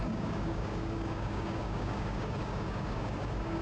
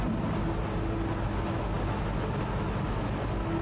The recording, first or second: second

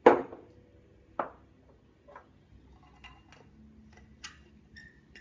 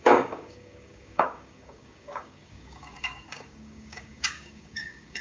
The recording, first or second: first